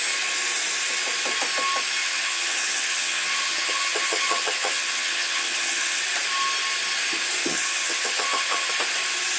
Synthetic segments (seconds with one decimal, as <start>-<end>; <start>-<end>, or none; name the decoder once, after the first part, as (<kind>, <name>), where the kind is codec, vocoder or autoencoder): 2.0-6.0 (vocoder, HiFi-GAN); 7.4-8.7